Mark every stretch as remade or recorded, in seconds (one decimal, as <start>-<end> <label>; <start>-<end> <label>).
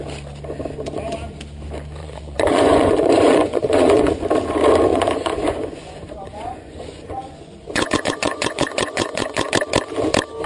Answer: 0.0-2.0 recorded; 2.0-4.1 remade; 4.1-4.9 recorded; 4.9-9.5 remade; 9.5-10.5 recorded